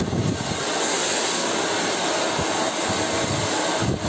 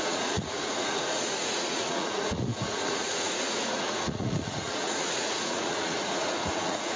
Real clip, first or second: first